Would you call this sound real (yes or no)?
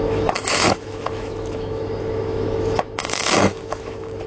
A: no